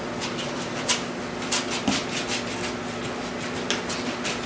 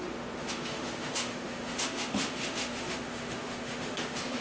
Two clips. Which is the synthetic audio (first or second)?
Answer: second